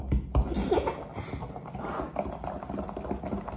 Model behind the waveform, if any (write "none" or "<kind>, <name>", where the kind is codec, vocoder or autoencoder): none